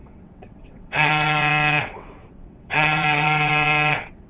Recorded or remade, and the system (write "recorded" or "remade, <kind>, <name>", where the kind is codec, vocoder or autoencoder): remade, vocoder, WaveNeXt